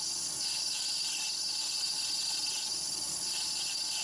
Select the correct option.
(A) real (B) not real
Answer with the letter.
A